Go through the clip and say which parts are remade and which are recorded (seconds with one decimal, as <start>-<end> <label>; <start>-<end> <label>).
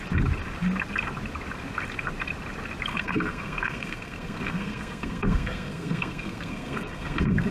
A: 0.0-2.9 recorded; 2.9-7.5 remade